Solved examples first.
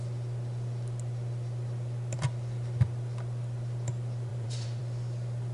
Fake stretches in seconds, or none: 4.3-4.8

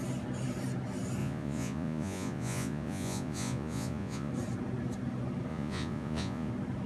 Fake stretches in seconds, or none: 1.2-4.3; 5.5-6.5

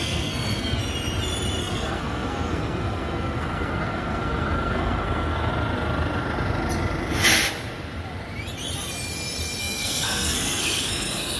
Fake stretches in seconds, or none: 0.0-0.8; 1.6-5.5; 9.6-11.4

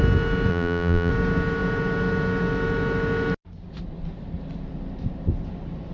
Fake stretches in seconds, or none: 0.5-1.1

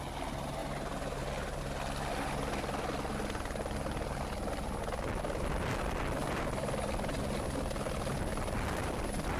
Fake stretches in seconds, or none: none

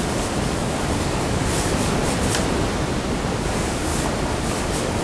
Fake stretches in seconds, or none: 0.0-2.0; 3.4-3.9; 4.6-5.0

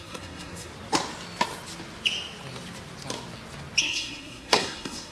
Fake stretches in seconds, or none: 0.0-0.7; 3.8-5.1